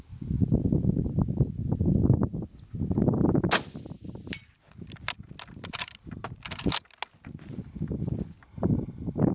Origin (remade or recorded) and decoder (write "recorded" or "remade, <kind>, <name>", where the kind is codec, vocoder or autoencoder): recorded